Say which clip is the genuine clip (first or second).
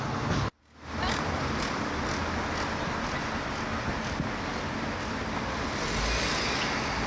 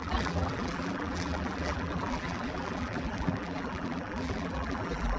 first